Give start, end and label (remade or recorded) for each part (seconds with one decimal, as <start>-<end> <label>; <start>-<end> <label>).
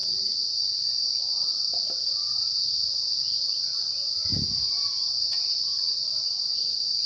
0.0-6.1 recorded; 6.1-7.1 remade